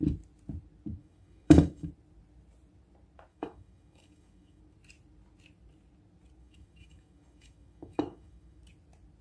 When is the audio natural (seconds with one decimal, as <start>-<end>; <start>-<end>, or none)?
0.0-1.0; 1.9-3.3; 4.6-6.4; 8.6-9.2